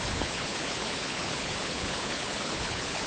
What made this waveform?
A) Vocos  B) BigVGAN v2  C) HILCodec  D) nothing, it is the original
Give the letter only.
C